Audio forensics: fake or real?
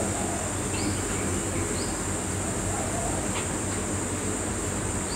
real